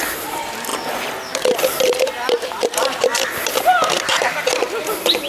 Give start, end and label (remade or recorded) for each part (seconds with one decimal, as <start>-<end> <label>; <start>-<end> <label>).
0.0-5.3 recorded